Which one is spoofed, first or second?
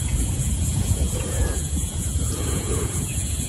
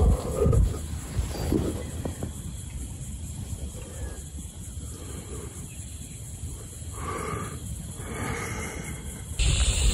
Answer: first